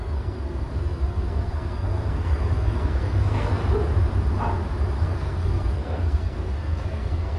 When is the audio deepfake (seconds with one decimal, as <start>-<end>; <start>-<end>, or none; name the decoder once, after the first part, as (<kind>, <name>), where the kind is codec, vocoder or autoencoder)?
0.0-3.6 (codec, SNAC); 5.0-7.4